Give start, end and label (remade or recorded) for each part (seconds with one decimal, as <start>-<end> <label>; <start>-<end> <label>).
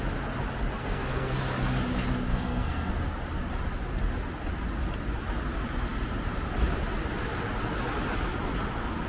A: 0.0-0.8 recorded; 0.8-1.4 remade; 1.4-2.3 recorded; 2.3-2.9 remade; 2.9-9.1 recorded